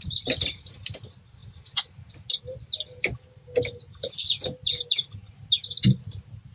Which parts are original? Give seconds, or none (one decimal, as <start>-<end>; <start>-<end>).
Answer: 0.0-6.5